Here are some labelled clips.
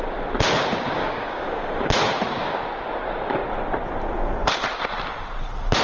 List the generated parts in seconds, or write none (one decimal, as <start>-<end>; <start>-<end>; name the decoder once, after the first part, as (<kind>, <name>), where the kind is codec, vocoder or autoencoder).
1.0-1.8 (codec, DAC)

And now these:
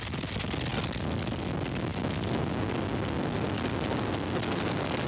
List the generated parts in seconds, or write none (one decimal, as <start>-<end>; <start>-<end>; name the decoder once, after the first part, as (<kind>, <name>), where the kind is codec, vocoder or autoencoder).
none

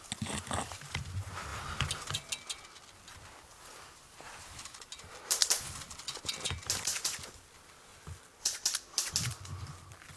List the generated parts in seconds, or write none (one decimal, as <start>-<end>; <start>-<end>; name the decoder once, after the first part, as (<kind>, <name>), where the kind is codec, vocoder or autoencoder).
none

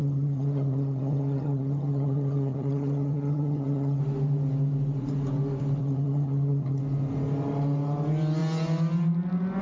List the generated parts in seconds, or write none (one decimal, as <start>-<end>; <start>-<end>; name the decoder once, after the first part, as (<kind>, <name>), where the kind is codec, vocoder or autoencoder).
0.0-4.0 (vocoder, HiFi-GAN); 5.8-6.8